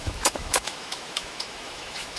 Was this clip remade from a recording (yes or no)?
yes